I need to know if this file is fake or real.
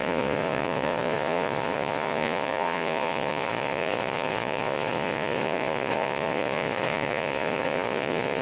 fake